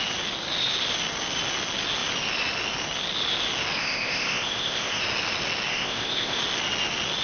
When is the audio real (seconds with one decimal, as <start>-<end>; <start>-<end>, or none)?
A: 0.0-3.8; 5.0-5.7; 6.4-7.2